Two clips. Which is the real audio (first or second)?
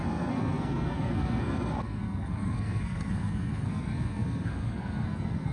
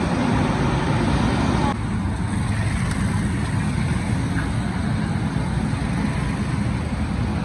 second